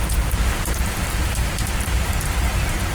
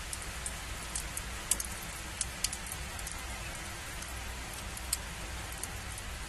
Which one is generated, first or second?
first